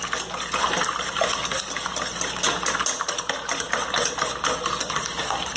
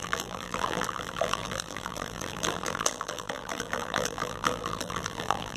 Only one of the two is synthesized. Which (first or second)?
second